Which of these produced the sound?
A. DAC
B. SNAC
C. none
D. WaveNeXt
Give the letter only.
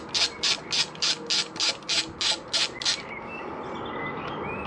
C